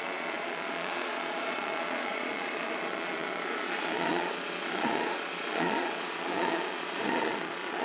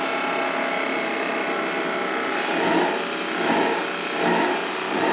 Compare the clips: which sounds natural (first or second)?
second